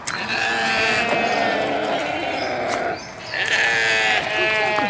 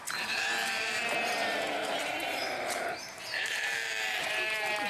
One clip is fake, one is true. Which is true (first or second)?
first